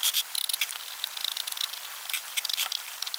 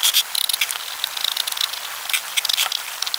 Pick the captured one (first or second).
second